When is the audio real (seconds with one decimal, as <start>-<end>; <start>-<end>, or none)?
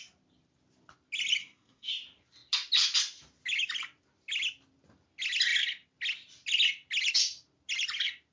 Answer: 0.0-1.4; 1.9-8.3